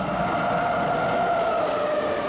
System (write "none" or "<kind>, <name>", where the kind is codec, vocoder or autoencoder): none